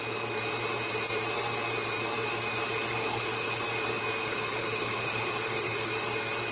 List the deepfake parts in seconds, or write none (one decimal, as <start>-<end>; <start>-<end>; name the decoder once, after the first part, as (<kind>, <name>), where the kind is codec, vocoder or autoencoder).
2.9-3.6 (codec, HILCodec); 4.2-5.9